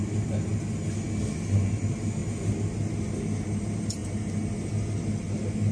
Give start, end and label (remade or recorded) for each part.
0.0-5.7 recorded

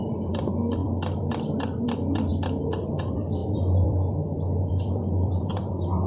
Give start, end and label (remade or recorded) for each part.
0.0-2.3 remade; 2.3-2.9 recorded; 2.9-6.1 remade

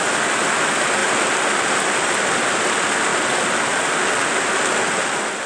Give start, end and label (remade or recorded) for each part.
0.0-5.5 recorded

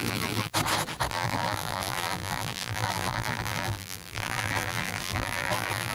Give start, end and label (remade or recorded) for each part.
0.0-0.5 remade; 0.5-1.1 recorded; 1.1-5.9 remade

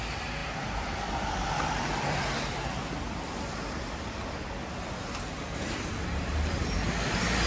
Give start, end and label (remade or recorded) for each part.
0.0-0.4 recorded; 0.4-4.5 remade; 4.5-7.5 recorded